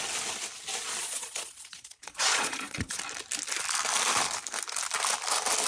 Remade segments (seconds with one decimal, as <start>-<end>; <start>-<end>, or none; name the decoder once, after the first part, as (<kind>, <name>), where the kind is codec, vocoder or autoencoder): 1.0-3.0 (vocoder, Vocos)